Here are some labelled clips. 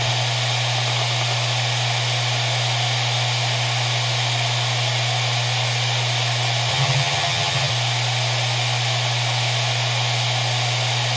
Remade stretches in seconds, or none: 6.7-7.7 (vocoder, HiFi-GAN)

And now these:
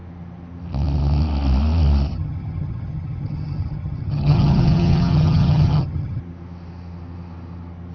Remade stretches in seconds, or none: 2.1-6.2 (vocoder, HiFi-GAN)

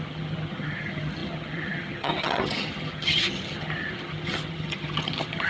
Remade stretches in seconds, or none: 0.0-5.5 (vocoder, HiFi-GAN)

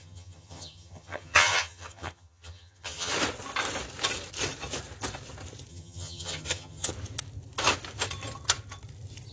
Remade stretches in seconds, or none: 0.0-3.1 (vocoder, HiFi-GAN); 5.7-6.9

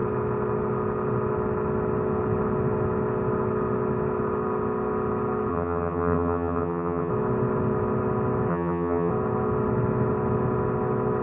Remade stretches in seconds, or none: 5.5-7.1 (vocoder, HiFi-GAN); 8.5-9.1